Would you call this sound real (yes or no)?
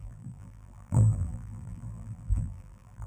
no